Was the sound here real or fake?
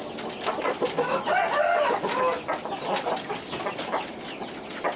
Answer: real